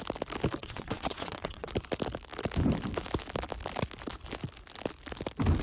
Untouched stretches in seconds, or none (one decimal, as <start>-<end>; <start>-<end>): 0.0-0.6; 1.7-5.6

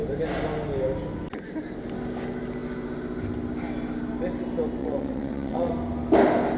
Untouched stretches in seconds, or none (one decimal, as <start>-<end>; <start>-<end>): 0.0-4.8; 5.7-6.6

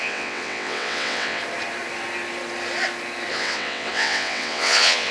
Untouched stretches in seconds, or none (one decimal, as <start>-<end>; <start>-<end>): 1.4-3.3

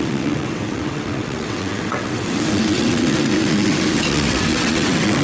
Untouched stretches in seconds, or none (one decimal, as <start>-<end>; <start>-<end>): none

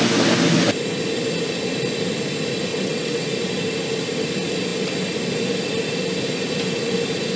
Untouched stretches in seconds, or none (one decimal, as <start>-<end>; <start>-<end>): 0.0-2.7; 3.3-7.4

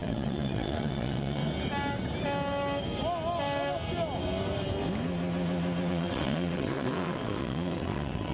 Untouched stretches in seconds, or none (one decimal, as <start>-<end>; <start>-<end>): 1.4-5.9

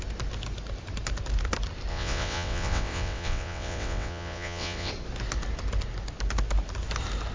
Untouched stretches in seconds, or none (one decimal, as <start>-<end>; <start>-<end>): 0.0-1.9; 4.9-7.3

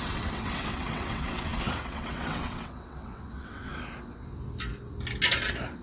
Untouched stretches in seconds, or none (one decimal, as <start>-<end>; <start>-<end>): 3.7-5.8